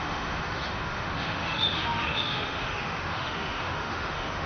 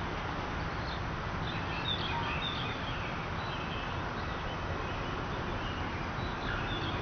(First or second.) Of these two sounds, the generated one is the first